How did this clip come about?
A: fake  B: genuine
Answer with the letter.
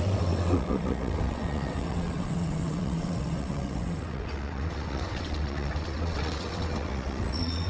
A